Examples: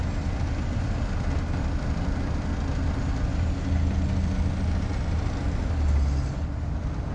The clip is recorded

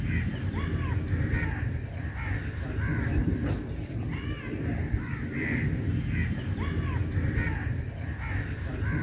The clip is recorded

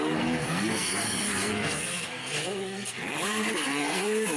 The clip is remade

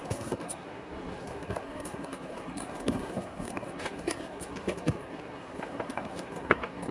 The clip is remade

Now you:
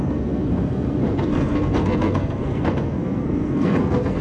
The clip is remade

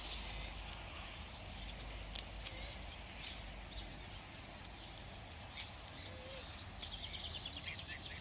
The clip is recorded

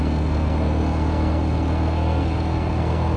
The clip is remade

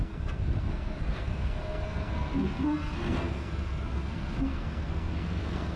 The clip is remade